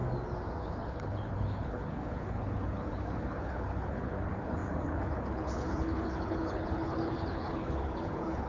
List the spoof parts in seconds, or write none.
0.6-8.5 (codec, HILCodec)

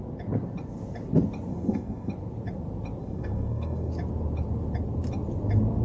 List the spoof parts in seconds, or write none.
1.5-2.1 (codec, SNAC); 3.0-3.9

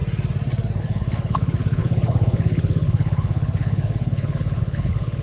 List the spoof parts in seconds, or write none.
0.8-5.2 (codec, HILCodec)

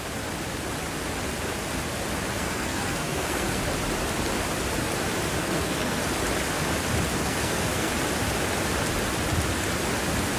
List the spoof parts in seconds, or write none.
2.3-3.6 (codec, SNAC); 5.4-6.0; 7.1-7.9

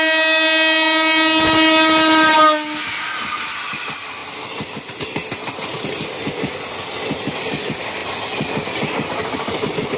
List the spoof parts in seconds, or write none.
none

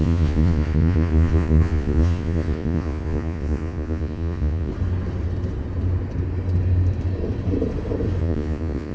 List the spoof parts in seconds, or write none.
0.0-4.7 (vocoder, Vocos); 8.2-8.9

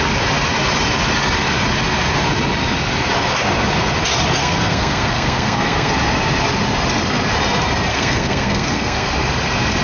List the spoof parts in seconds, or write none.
4.4-5.9 (codec, SNAC); 7.9-9.1

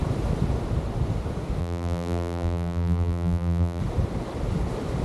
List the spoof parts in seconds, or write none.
1.6-3.8 (vocoder, BigVGAN v2)